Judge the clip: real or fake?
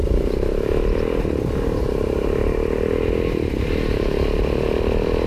fake